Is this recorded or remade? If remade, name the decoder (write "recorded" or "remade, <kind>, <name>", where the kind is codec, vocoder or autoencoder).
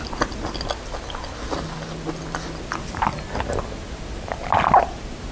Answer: recorded